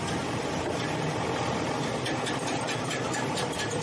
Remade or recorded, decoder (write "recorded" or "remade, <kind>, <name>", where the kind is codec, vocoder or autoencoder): recorded